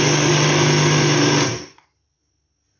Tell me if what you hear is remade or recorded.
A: recorded